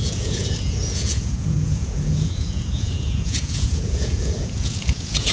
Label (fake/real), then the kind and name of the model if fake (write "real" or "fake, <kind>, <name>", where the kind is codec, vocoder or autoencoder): fake, vocoder, Vocos